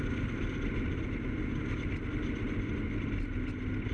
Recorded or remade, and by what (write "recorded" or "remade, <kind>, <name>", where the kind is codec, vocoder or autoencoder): recorded